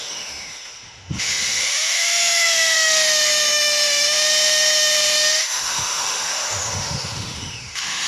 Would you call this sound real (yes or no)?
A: no